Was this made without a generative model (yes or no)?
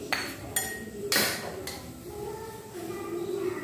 yes